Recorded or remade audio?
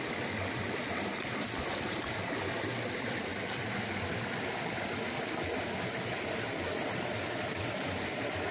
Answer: recorded